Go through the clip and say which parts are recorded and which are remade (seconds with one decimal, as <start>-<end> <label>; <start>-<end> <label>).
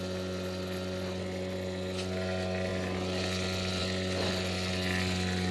0.0-5.5 recorded